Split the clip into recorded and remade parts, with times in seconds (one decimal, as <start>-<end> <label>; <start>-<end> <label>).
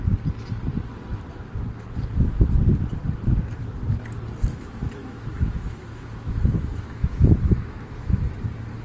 0.0-4.5 recorded; 4.5-8.2 remade; 8.2-8.8 recorded